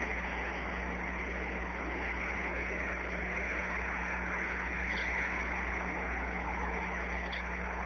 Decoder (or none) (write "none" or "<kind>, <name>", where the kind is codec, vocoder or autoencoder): codec, HILCodec